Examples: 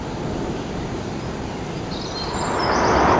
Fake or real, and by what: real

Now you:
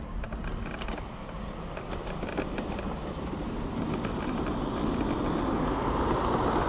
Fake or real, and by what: real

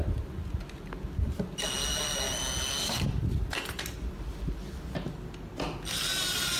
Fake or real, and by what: real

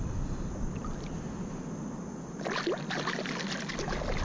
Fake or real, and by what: real